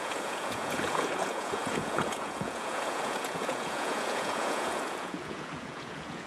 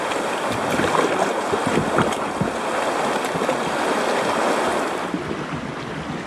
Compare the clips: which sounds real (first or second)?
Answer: second